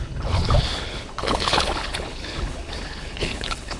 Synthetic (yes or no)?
yes